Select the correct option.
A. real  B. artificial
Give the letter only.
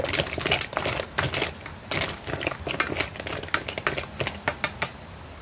A